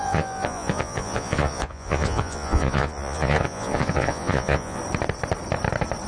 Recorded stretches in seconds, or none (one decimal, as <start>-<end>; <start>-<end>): 4.8-6.1